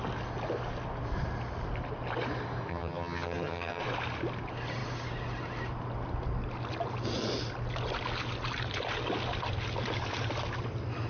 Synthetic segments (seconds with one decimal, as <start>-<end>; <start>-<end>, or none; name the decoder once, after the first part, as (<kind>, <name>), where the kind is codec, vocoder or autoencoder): 2.7-3.8 (vocoder, HiFi-GAN)